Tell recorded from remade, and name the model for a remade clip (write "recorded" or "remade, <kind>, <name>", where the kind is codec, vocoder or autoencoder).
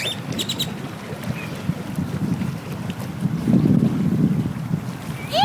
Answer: recorded